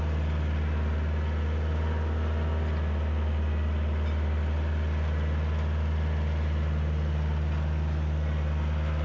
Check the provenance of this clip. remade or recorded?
recorded